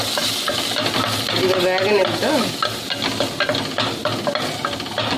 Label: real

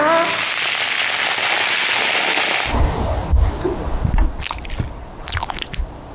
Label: real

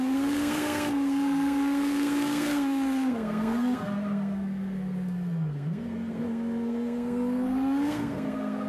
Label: fake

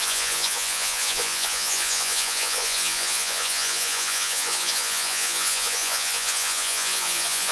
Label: fake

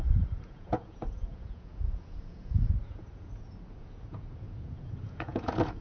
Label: fake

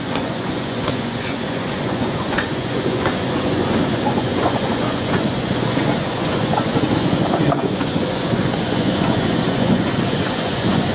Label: fake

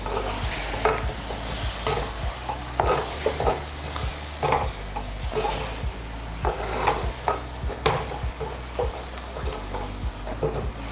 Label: real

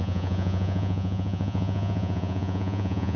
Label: fake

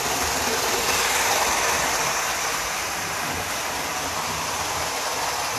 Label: real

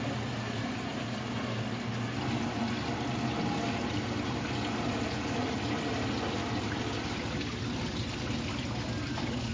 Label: real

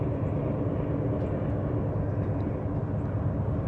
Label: real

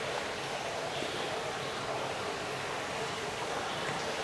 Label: real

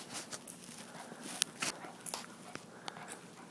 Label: real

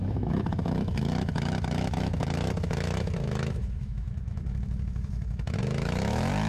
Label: fake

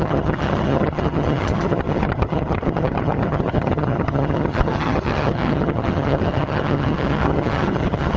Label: fake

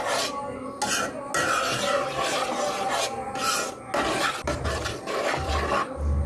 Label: real